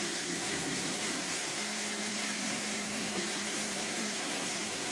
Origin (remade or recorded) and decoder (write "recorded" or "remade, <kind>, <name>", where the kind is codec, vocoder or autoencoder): remade, codec, SNAC